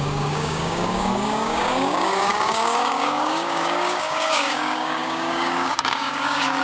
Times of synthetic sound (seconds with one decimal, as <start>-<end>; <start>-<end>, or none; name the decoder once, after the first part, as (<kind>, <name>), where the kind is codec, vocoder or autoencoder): 0.0-6.6 (codec, DAC)